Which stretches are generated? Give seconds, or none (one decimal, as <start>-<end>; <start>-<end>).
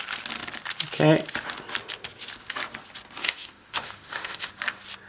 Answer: 3.2-4.5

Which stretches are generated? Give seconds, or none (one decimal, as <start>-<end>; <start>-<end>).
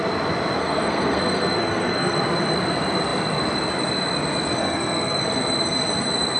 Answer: 0.6-2.2; 4.6-5.2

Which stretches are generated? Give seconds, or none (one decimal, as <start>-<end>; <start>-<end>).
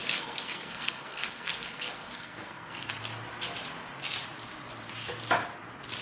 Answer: 0.0-2.9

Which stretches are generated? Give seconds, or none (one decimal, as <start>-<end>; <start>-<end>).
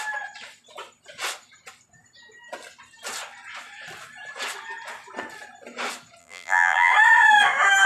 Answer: 6.2-6.9